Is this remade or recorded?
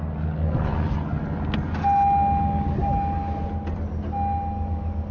recorded